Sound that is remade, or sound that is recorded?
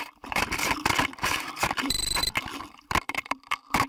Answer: remade